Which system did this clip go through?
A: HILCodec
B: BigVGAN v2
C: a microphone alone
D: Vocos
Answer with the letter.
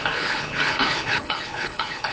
A